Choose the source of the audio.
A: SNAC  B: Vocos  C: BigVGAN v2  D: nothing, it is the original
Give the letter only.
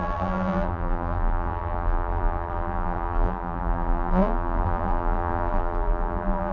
C